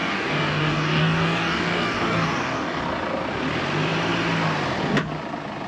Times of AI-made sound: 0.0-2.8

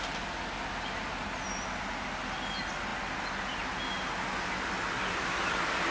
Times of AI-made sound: none

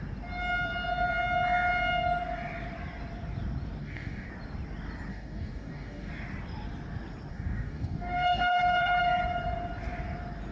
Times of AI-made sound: 3.8-4.3; 5.1-6.1; 7.3-9.0

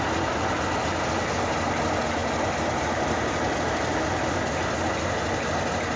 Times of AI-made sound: none

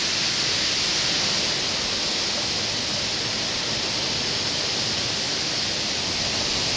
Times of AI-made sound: none

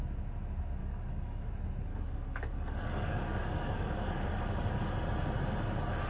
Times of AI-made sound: 0.8-1.5; 1.9-4.9

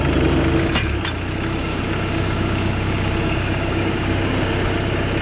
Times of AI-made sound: 1.6-4.3

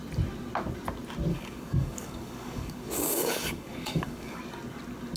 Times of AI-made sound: 1.3-4.4